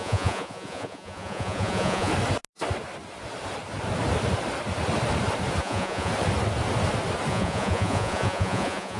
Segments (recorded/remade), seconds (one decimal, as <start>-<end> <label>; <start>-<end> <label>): 0.0-2.1 remade; 2.1-5.6 recorded; 5.6-6.1 remade; 6.1-7.3 recorded; 7.3-9.0 remade